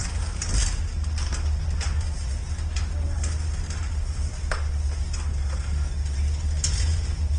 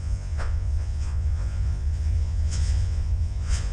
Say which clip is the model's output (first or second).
second